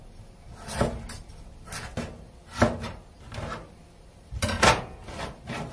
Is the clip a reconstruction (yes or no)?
no